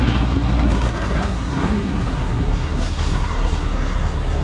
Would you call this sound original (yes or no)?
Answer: no